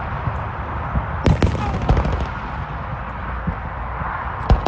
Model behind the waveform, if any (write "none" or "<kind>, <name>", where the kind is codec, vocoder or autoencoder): none